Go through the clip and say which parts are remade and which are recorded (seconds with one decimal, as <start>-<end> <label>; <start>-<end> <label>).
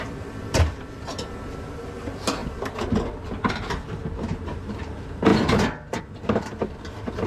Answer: 0.0-2.4 remade; 2.4-3.5 recorded; 3.5-5.3 remade; 5.3-6.0 recorded; 6.0-7.3 remade